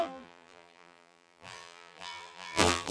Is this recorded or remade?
remade